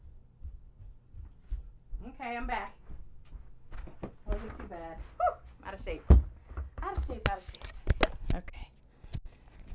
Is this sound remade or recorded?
recorded